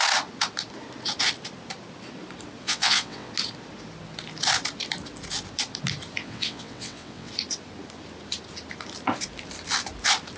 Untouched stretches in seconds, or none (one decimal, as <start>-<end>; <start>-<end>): 0.0-2.6; 3.3-6.2; 7.3-10.4